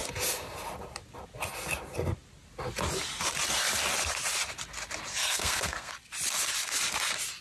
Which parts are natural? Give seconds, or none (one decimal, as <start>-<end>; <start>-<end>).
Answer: 0.0-5.1; 5.9-7.4